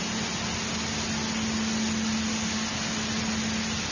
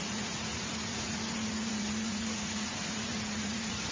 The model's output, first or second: second